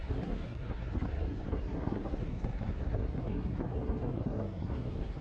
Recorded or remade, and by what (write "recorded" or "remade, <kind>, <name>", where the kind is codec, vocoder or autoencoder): remade, codec, SNAC